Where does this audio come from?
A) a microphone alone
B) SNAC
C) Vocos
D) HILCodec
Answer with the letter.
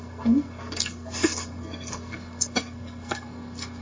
B